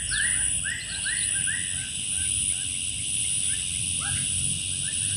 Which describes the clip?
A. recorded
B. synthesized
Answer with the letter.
A